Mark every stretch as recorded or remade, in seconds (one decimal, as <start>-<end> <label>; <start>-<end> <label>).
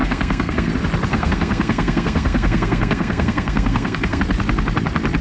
0.0-0.7 remade; 0.7-1.1 recorded; 1.1-4.2 remade; 4.2-5.2 recorded